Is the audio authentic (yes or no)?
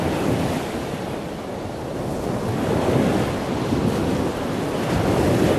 yes